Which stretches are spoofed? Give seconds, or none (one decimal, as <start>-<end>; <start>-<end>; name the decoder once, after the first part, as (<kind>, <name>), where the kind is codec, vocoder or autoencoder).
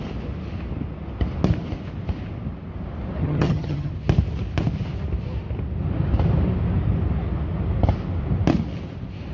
3.2-3.9 (vocoder, HiFi-GAN)